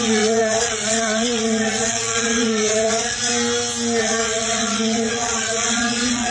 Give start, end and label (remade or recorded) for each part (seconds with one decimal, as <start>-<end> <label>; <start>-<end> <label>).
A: 0.0-3.3 remade; 3.3-4.0 recorded; 4.0-6.3 remade